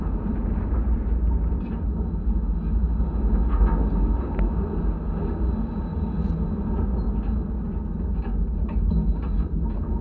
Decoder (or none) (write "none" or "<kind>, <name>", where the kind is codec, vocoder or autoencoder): none